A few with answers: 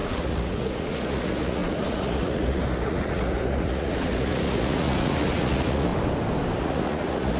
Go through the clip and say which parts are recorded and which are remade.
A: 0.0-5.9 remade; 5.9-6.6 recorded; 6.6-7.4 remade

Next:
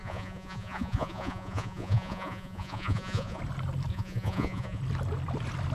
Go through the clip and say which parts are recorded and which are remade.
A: 0.0-3.4 remade; 3.4-3.9 recorded; 3.9-4.8 remade; 4.8-5.7 recorded

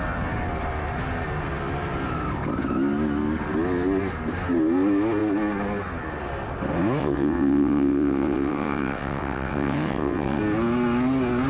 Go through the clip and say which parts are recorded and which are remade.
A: 0.0-7.0 recorded; 7.0-10.4 remade; 10.4-11.5 recorded

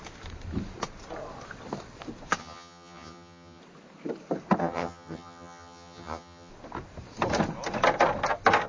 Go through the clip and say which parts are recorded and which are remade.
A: 0.0-2.4 recorded; 2.4-3.6 remade; 3.6-4.6 recorded; 4.6-6.5 remade; 6.5-8.7 recorded